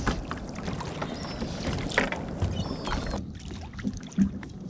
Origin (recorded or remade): recorded